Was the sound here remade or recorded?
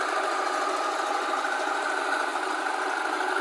remade